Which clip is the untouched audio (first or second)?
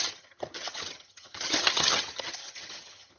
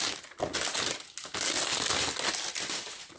second